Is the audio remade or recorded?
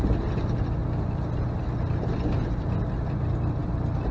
recorded